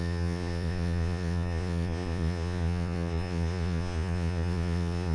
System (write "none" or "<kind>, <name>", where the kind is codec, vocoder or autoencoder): vocoder, Vocos